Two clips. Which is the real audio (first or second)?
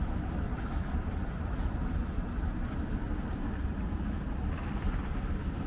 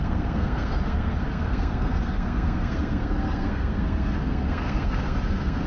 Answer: first